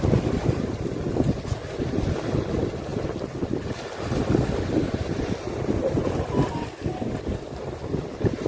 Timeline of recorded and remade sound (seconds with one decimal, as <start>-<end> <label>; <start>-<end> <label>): 0.0-8.5 recorded